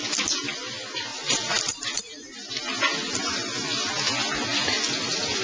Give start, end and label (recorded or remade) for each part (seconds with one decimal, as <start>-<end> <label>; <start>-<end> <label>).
0.0-1.1 recorded; 1.1-2.5 remade; 2.5-5.4 recorded